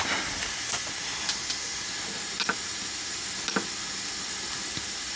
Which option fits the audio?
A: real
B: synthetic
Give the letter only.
A